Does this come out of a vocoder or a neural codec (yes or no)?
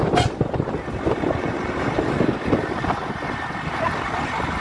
no